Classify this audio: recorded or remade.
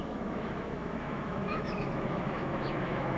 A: remade